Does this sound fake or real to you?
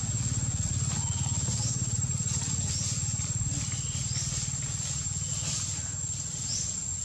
real